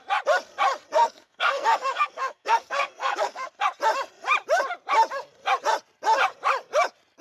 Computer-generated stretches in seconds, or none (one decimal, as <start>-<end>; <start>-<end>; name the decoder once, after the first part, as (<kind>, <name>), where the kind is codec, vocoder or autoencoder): 1.0-3.5 (codec, SNAC)